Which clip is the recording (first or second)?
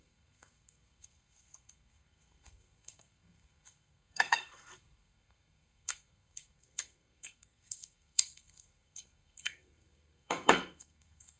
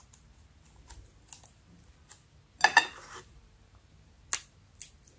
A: second